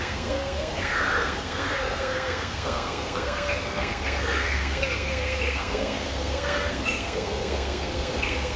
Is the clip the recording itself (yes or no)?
no